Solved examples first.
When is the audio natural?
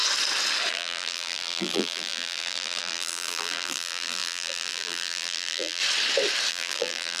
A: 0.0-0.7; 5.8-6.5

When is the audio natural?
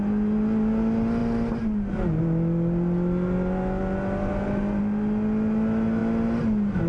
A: 0.0-6.9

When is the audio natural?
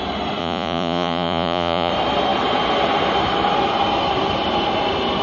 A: 0.0-0.4; 1.9-5.2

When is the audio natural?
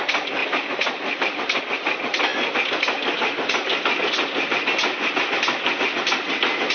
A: 0.0-0.4; 1.6-6.7